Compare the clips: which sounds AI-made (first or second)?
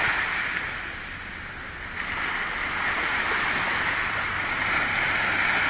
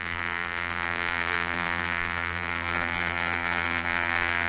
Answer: second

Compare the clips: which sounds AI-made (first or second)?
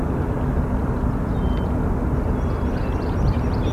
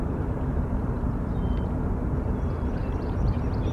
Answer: second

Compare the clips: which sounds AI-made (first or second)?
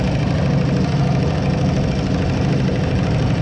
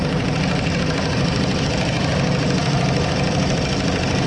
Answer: second